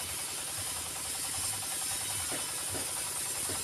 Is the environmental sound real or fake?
real